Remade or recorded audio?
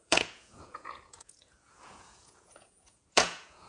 remade